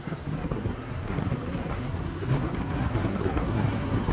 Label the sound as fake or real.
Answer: fake